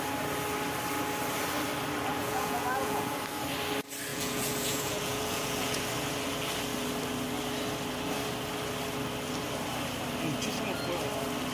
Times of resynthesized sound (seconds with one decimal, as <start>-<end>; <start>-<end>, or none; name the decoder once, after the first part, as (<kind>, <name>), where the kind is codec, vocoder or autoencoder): 2.2-3.2 (vocoder, Vocos); 4.1-5.8

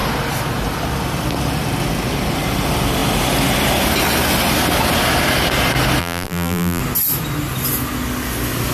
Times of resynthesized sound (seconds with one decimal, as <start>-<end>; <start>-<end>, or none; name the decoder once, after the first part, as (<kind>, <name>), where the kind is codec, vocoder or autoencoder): 6.0-6.8 (vocoder, BigVGAN v2)

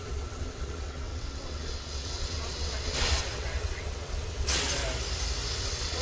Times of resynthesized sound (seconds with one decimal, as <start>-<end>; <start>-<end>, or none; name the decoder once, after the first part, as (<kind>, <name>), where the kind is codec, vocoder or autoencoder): 0.0-4.8 (vocoder, WaveNeXt); 5.6-6.0

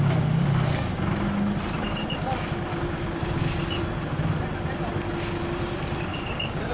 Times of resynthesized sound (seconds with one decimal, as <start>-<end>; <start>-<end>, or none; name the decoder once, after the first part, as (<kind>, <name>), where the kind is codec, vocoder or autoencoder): 2.7-3.6 (codec, DAC); 6.1-6.7

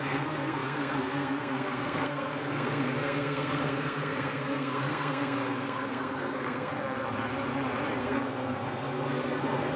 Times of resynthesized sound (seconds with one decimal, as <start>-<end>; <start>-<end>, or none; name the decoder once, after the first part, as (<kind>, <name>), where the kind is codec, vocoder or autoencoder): 0.0-6.7 (codec, SNAC); 8.0-9.8